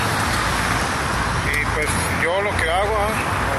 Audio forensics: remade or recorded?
recorded